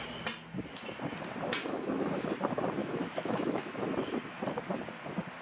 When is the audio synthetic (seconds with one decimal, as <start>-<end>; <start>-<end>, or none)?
1.6-2.3; 2.8-3.8